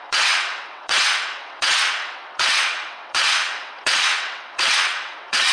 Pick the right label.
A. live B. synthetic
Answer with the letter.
B